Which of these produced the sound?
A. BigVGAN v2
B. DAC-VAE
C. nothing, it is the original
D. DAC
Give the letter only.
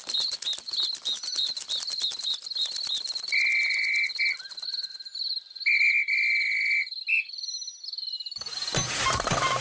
C